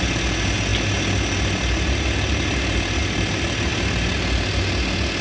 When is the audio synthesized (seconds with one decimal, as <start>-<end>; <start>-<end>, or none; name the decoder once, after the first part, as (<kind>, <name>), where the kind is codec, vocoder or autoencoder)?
3.0-3.7 (vocoder, BigVGAN v2)